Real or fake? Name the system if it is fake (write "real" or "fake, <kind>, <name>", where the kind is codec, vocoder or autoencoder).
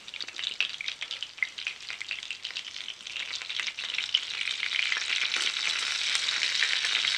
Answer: real